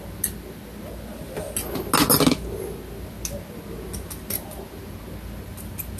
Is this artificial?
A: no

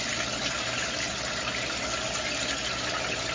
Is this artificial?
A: no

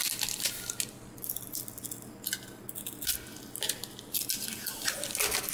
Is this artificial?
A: no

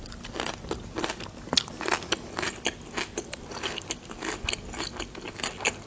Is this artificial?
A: no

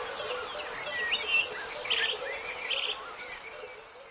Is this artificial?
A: no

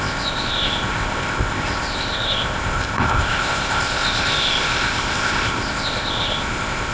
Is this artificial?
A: yes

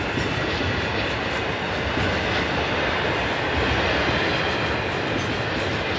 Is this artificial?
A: no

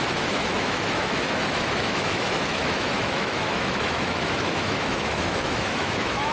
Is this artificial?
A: yes